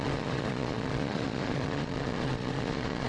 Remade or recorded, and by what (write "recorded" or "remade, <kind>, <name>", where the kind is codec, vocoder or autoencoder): remade, vocoder, Vocos